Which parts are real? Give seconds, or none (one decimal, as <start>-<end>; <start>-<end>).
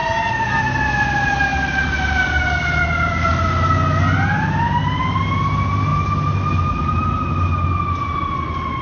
0.0-8.8